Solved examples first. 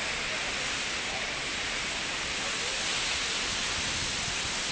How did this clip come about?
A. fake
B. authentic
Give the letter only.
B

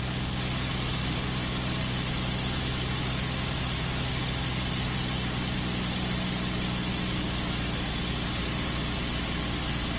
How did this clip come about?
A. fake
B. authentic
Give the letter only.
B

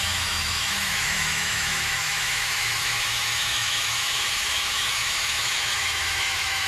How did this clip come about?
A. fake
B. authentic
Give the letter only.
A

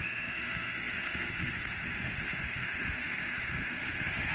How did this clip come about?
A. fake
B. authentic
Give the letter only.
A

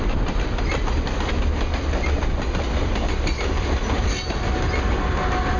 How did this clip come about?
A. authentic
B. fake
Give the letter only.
A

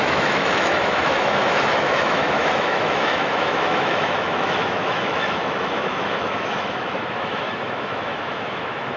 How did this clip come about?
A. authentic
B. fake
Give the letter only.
B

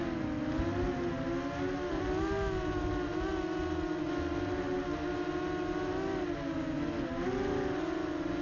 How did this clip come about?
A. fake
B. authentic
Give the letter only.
B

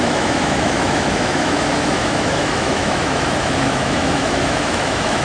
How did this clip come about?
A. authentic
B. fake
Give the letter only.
B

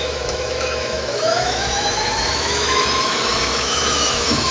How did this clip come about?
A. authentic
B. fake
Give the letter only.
B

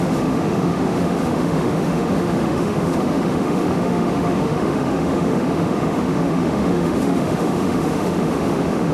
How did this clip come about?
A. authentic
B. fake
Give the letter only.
B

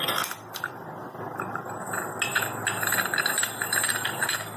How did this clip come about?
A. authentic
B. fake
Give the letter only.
A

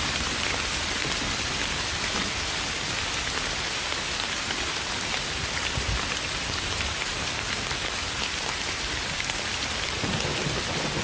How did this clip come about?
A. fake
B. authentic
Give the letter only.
B